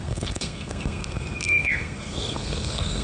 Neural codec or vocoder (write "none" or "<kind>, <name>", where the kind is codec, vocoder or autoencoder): codec, SNAC